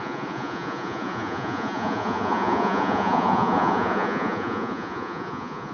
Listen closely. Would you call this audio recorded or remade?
remade